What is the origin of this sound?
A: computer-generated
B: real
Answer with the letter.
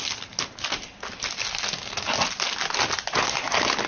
B